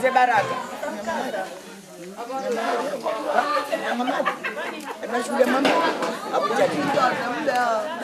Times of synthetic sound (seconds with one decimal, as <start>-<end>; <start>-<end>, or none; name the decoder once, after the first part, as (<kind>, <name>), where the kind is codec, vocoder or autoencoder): 2.6-4.0 (codec, SNAC)